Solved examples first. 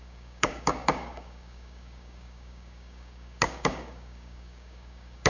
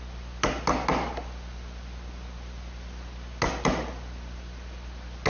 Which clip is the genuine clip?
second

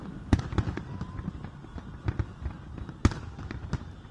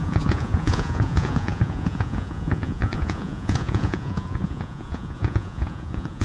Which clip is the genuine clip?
first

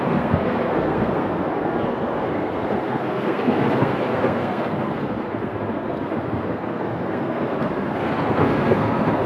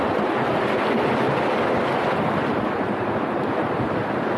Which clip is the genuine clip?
second